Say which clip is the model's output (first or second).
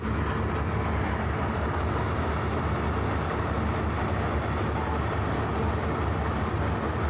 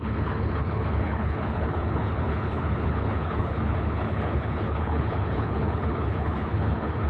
second